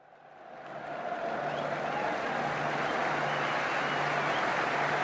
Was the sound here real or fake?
fake